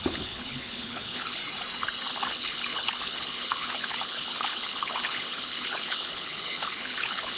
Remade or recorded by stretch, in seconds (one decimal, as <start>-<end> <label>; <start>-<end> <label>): 0.0-1.4 remade; 1.4-2.1 recorded; 2.1-7.4 remade